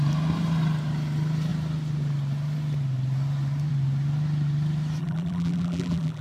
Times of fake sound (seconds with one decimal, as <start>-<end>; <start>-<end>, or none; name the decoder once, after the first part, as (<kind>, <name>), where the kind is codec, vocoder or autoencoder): 5.0-6.2 (vocoder, BigVGAN v2)